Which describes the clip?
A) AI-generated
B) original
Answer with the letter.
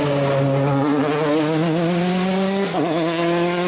B